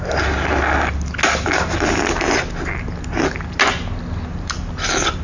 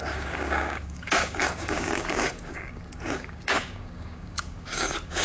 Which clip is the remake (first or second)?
second